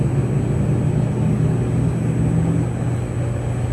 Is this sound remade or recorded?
recorded